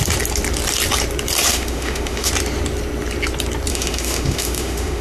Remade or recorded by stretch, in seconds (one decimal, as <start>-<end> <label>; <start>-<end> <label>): 0.0-1.5 recorded; 1.5-2.3 remade; 2.3-3.7 recorded; 3.7-5.0 remade